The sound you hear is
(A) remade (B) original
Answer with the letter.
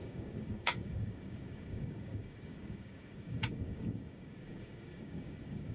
A